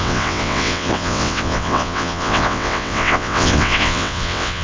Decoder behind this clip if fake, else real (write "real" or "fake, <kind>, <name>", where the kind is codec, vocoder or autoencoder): fake, vocoder, WaveNeXt